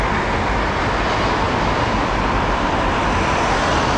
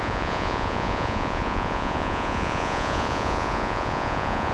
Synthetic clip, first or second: second